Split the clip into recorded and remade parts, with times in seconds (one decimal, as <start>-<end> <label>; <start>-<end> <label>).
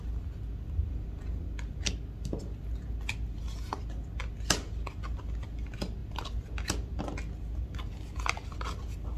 0.0-9.2 recorded